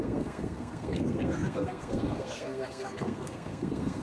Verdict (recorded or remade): remade